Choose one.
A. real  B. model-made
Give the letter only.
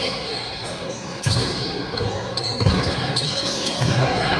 B